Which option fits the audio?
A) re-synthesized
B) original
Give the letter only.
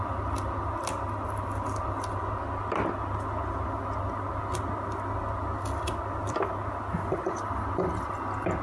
B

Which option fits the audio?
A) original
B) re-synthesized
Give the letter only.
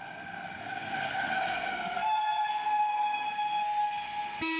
B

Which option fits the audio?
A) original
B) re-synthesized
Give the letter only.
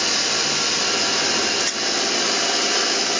A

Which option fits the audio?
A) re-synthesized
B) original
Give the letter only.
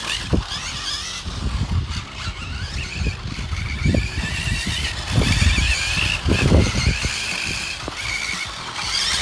B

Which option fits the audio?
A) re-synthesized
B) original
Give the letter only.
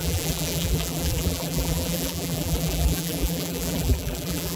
A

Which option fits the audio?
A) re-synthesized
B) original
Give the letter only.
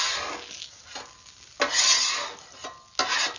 B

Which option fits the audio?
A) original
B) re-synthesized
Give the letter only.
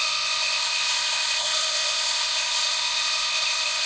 B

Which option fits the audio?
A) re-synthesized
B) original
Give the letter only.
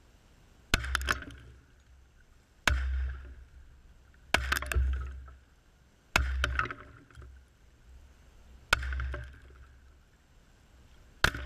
B